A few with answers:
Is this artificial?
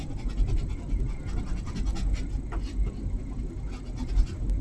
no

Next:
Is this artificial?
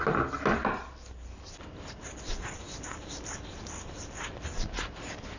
no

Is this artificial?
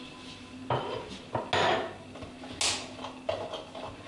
no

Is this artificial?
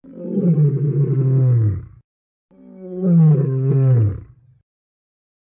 no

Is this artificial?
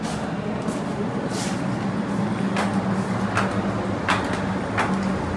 no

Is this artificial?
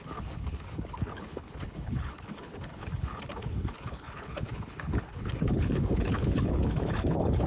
yes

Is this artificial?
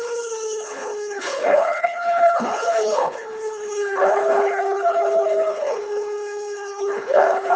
yes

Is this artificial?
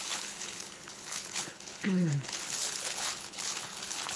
yes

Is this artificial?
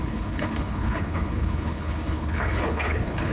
yes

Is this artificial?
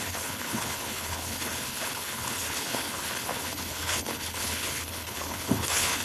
yes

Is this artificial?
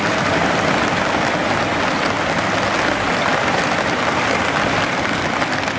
no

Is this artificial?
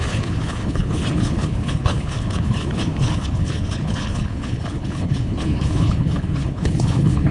yes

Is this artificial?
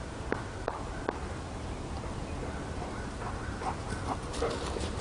no